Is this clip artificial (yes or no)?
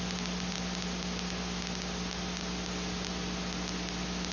no